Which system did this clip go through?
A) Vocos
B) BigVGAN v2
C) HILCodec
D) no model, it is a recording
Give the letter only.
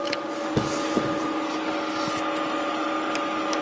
D